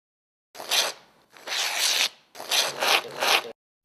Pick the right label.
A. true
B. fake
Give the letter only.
A